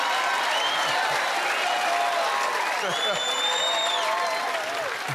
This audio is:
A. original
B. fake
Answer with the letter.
A